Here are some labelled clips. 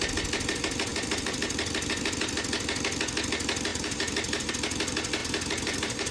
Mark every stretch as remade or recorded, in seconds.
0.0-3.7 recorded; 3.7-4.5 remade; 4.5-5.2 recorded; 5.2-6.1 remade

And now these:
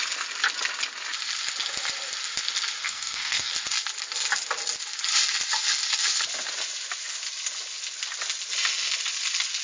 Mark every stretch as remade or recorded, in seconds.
0.0-2.8 recorded; 2.8-3.5 remade; 3.5-9.6 recorded

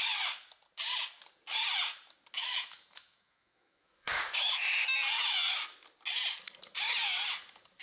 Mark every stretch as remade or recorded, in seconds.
0.0-2.4 recorded; 2.4-4.2 remade; 4.2-7.8 recorded